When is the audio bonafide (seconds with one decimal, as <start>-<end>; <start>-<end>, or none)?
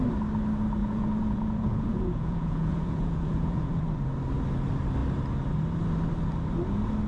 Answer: 0.0-0.8; 3.8-7.1